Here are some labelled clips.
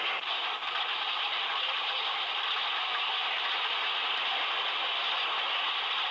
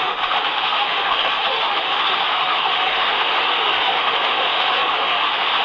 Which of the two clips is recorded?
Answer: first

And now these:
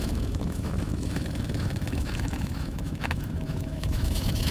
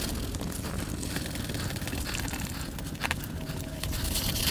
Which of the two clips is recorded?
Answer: second